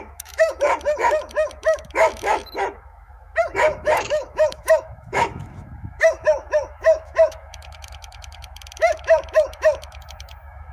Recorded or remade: remade